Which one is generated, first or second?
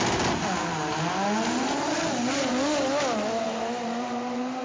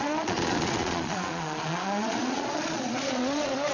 second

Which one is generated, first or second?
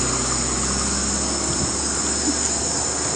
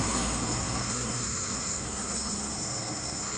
second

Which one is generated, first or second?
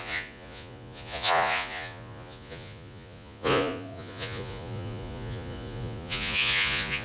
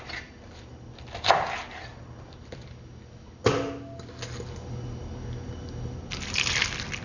first